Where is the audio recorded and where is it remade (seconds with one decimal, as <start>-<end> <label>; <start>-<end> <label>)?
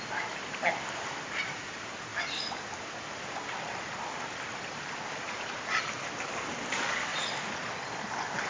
0.0-7.1 remade; 7.1-8.5 recorded